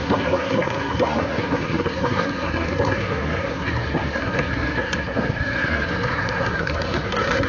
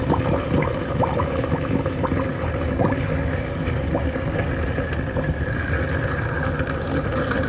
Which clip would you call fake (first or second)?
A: first